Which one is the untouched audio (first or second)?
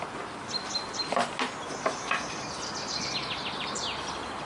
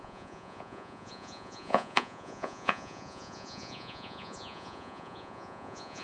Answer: first